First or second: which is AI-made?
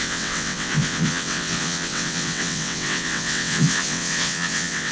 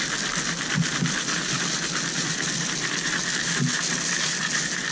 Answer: first